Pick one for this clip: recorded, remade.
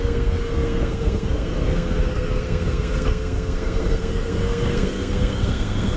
remade